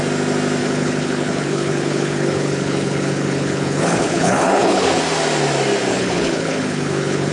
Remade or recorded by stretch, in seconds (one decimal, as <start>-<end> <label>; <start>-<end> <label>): 0.0-0.6 recorded; 0.6-5.0 remade; 5.0-5.9 recorded; 5.9-7.3 remade